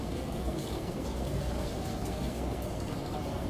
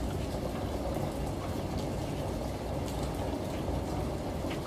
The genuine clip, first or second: second